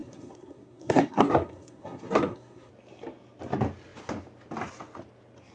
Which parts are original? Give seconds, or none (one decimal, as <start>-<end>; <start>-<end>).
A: 2.7-5.5

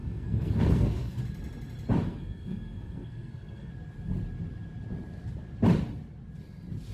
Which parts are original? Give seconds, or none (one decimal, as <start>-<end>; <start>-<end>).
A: 1.2-2.1; 3.7-6.9

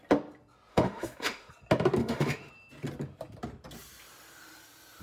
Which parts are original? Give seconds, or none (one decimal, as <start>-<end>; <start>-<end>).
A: 0.0-0.7; 1.5-2.0; 2.5-5.0

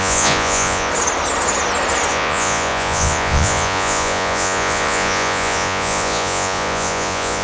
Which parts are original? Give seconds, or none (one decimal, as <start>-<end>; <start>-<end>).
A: 0.9-2.1

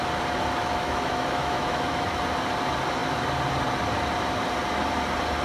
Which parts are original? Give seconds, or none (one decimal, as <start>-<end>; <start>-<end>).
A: 0.0-0.6; 2.2-5.4

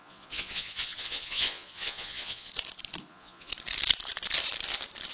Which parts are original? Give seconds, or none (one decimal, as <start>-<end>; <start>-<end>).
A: 2.5-3.1; 3.5-5.1

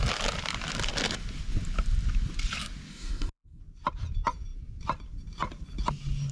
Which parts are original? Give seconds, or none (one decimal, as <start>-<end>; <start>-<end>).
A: 0.0-2.9; 3.6-6.3